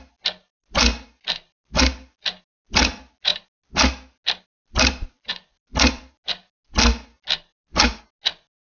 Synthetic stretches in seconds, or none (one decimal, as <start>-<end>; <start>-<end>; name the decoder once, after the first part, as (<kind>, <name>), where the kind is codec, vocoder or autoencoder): none